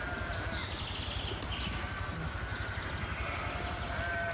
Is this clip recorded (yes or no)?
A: yes